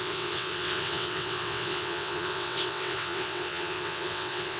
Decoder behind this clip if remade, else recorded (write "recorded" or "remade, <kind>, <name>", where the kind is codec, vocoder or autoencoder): remade, vocoder, WaveNeXt